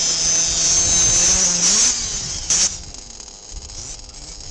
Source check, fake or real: real